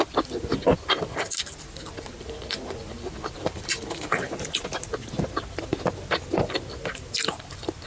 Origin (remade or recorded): recorded